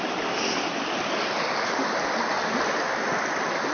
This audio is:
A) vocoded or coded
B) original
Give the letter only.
B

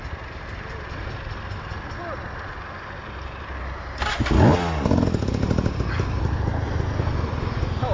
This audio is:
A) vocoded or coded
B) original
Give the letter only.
B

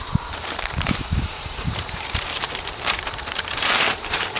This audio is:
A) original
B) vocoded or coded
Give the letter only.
B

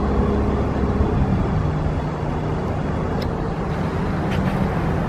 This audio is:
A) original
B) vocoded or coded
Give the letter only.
A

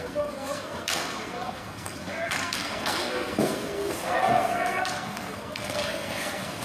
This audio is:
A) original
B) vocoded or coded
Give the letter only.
B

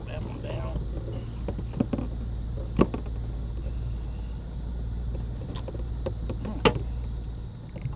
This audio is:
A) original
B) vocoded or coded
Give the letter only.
A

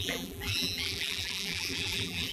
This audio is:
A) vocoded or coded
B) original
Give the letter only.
A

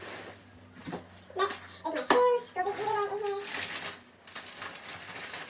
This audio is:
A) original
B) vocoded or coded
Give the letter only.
A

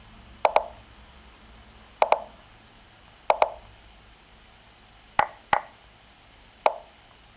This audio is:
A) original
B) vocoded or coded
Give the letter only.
A